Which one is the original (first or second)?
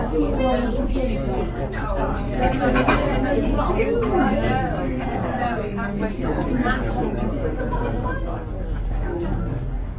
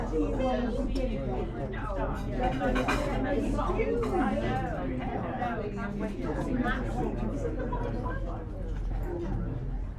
second